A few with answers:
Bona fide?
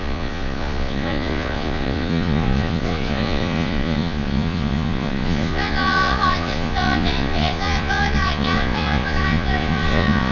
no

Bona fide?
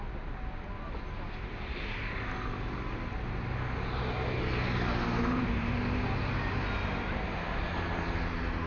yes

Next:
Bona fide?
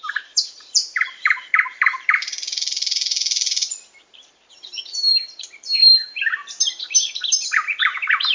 no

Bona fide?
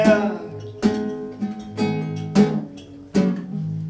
yes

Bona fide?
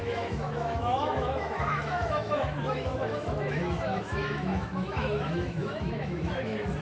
no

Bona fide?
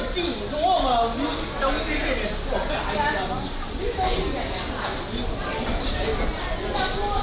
yes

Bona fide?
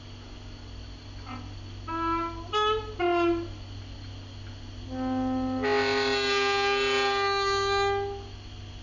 yes